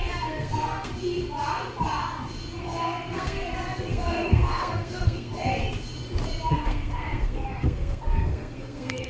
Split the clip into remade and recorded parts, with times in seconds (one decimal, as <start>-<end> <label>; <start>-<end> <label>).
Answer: 0.0-0.9 remade; 0.9-2.6 recorded; 2.6-5.3 remade; 5.3-6.5 recorded; 6.5-9.1 remade